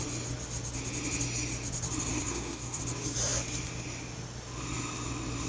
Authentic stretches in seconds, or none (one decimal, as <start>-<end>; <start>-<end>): 0.0-2.1; 2.8-5.5